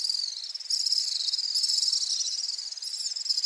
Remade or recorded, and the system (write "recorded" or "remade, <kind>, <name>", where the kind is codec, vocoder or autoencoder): recorded